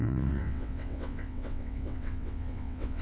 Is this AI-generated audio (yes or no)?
yes